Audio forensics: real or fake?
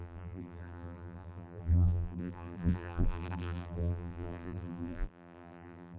fake